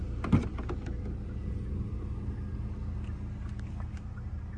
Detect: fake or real real